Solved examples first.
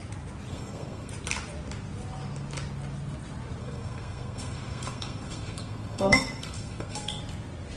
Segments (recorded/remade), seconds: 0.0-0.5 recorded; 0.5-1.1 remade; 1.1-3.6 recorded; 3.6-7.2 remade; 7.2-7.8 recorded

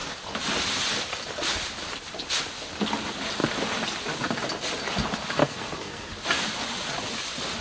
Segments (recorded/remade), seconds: 0.0-5.4 recorded; 5.4-6.1 remade; 6.1-7.6 recorded